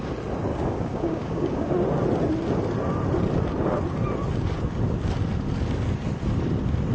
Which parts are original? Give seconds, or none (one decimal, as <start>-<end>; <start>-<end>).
0.0-0.5; 1.7-6.9